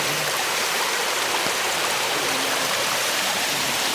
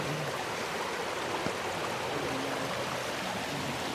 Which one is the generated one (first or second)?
first